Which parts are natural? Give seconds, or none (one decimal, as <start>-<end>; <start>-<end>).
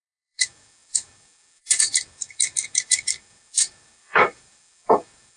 none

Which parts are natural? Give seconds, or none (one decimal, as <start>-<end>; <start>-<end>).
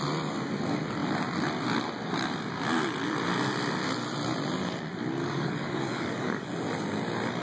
0.0-5.2; 6.5-7.4